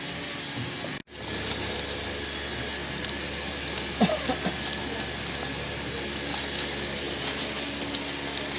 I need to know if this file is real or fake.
real